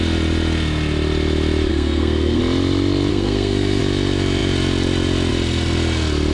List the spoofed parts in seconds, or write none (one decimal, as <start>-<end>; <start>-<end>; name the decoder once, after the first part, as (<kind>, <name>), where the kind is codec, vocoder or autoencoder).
1.7-2.4 (codec, SNAC); 3.1-3.8